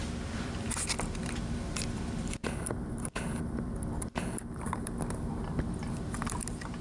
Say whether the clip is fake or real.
fake